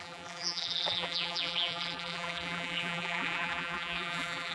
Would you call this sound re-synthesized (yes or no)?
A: yes